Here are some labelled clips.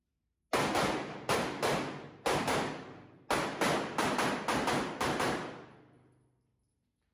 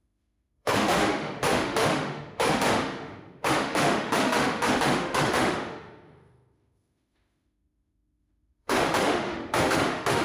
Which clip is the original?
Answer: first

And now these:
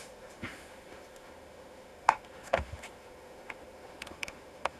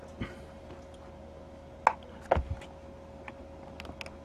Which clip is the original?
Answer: second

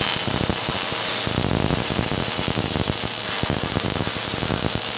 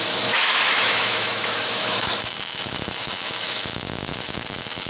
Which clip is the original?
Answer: first